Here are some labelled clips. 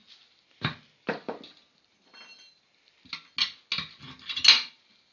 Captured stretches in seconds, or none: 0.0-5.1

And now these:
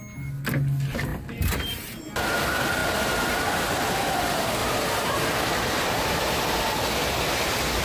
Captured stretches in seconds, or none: 0.0-1.1; 2.0-4.6; 6.2-7.8

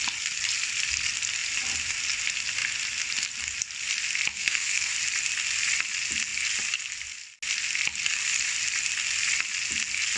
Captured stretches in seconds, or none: 0.0-4.3; 4.9-10.2

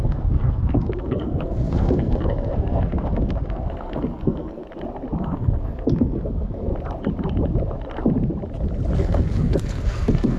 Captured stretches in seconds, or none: 4.6-5.2; 6.7-9.0